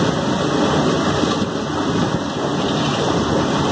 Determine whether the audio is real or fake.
real